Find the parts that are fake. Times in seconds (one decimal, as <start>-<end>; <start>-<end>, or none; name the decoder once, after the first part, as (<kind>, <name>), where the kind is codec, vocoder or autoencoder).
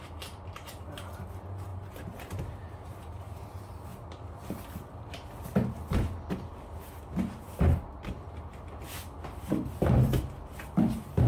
1.7-3.4 (vocoder, BigVGAN v2)